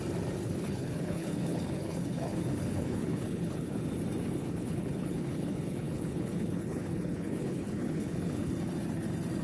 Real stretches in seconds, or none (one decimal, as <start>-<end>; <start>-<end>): 0.0-0.4; 3.9-4.4; 8.5-9.4